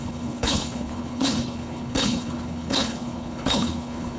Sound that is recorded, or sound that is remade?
remade